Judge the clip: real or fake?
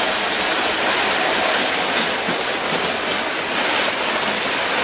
real